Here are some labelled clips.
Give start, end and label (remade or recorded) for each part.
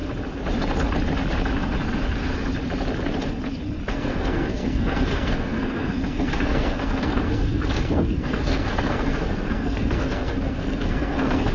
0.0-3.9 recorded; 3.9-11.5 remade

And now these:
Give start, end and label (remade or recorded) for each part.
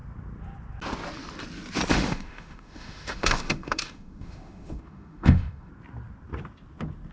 0.0-1.9 recorded; 1.9-5.7 remade; 5.7-7.1 recorded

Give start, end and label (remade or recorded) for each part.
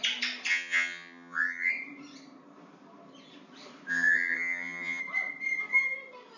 0.0-0.5 recorded; 0.5-1.7 remade; 1.7-3.9 recorded; 3.9-5.0 remade; 5.0-6.4 recorded